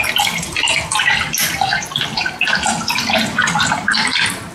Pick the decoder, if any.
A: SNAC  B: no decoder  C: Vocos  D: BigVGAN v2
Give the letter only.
B